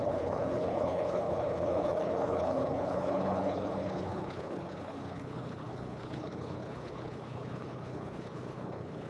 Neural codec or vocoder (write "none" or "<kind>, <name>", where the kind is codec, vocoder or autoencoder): codec, HILCodec